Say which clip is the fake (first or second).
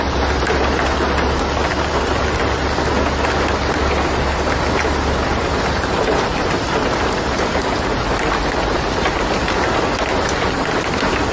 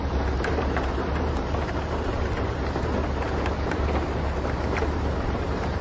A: second